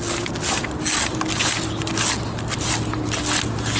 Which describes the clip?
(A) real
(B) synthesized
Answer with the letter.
A